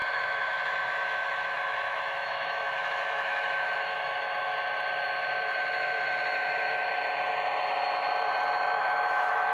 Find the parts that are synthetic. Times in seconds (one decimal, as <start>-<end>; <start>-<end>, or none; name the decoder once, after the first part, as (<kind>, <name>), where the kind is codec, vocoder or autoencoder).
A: 0.0-4.5 (autoencoder, DAC-VAE); 8.8-9.5